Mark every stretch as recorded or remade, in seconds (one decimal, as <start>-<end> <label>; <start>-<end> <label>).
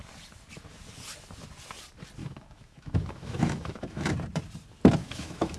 0.0-2.2 recorded; 2.2-4.1 remade; 4.1-5.0 recorded; 5.0-5.6 remade